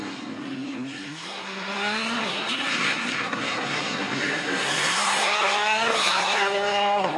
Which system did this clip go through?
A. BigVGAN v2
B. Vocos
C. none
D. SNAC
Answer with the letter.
D